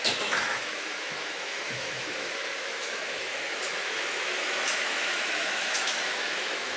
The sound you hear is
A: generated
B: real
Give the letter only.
A